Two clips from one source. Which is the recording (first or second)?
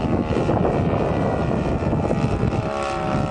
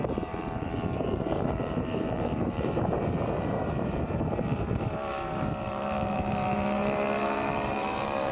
first